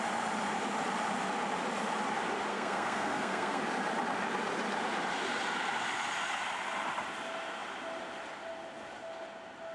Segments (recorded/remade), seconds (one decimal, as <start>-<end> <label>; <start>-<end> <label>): 0.0-2.5 recorded; 2.5-3.6 remade; 3.6-9.7 recorded